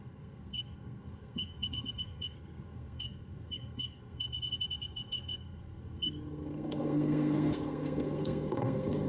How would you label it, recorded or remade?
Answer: remade